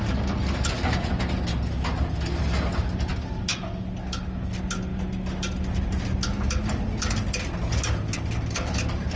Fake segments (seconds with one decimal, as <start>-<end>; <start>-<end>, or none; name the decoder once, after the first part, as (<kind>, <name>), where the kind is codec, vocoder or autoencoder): none